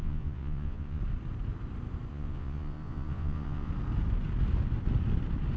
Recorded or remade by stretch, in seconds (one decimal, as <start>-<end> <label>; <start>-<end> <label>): 0.0-1.0 remade; 1.0-2.1 recorded; 2.1-3.7 remade; 3.7-5.6 recorded